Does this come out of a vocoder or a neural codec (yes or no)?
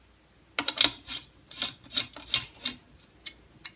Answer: no